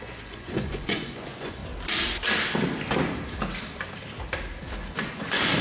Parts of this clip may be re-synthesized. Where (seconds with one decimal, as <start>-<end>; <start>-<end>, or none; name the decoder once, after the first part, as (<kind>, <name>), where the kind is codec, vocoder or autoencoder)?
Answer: 0.0-1.6 (vocoder, Vocos); 5.0-5.6